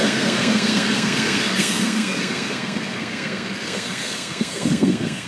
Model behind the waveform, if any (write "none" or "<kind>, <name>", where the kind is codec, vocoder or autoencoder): codec, SNAC